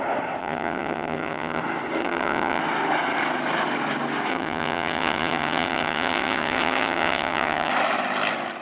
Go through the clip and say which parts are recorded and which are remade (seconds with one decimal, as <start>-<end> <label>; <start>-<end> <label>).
0.0-0.4 recorded; 0.4-1.6 remade; 1.6-2.0 recorded; 2.0-2.6 remade; 2.6-4.3 recorded; 4.3-7.7 remade; 7.7-8.6 recorded